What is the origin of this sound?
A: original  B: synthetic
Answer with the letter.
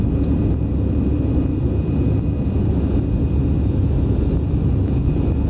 A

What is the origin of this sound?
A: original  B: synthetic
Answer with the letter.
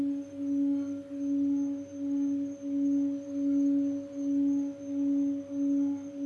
A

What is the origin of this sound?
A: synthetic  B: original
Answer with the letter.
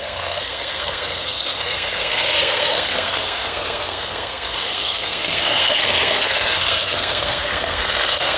A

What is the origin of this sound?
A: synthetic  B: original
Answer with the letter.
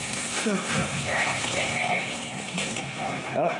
A